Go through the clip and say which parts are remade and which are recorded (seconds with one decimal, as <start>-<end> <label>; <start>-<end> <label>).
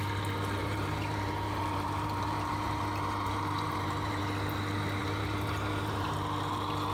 0.0-0.6 recorded; 0.6-4.2 remade; 4.2-5.0 recorded; 5.0-6.1 remade; 6.1-6.9 recorded